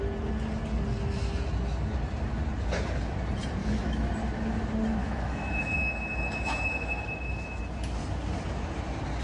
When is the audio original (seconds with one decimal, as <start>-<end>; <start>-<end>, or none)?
0.0-3.6; 4.1-5.0; 7.6-9.2